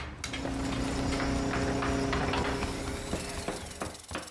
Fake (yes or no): no